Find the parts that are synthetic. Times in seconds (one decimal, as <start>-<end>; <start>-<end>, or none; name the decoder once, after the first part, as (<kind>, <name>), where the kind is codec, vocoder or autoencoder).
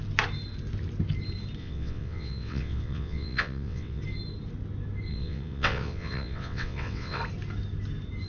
1.6-4.0 (vocoder, WaveNeXt); 5.1-7.2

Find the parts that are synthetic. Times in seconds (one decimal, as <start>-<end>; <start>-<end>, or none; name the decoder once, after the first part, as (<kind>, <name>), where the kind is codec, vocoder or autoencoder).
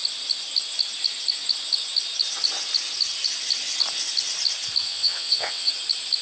4.8-5.7 (vocoder, WaveNeXt)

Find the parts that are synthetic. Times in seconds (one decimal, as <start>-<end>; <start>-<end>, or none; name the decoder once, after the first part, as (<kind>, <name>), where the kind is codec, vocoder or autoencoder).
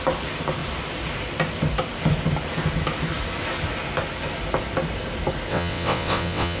5.5-6.6 (vocoder, WaveNeXt)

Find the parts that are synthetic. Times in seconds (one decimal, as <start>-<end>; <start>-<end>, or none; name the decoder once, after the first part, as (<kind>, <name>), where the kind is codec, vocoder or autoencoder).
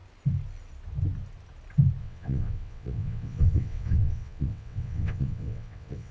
2.0-6.1 (vocoder, WaveNeXt)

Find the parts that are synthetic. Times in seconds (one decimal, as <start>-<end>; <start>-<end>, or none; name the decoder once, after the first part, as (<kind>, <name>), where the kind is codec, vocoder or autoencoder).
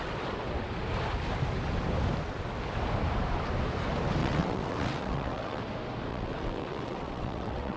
4.2-5.6 (vocoder, WaveNeXt); 6.1-7.8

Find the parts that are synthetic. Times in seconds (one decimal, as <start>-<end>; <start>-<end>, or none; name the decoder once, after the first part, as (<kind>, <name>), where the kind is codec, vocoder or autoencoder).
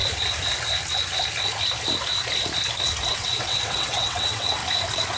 3.1-4.6 (vocoder, WaveNeXt)